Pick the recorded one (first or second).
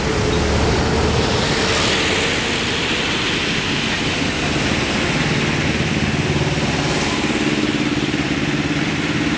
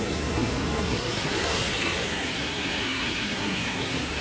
first